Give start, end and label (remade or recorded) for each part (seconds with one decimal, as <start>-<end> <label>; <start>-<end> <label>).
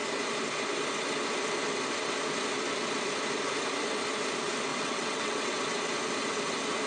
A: 0.0-4.7 recorded; 4.7-5.5 remade; 5.5-6.9 recorded